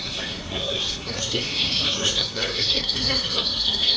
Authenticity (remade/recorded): remade